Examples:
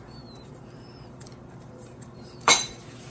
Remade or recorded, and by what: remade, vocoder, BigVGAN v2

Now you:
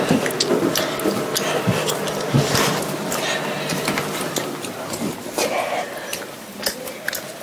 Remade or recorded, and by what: recorded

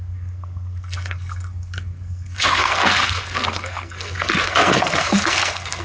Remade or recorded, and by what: remade, codec, SNAC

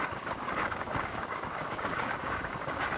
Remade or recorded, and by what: remade, codec, DAC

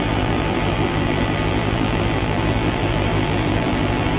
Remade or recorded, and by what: remade, vocoder, BigVGAN v2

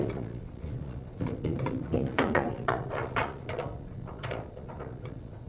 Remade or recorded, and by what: remade, vocoder, Vocos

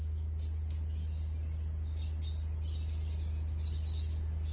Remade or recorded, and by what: recorded